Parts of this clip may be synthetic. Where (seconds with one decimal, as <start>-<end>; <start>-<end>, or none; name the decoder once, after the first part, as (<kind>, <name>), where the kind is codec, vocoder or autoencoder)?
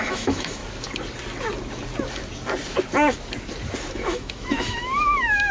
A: 0.0-0.6 (autoencoder, DAC-VAE); 3.9-5.5